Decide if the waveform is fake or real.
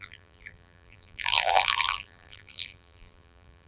fake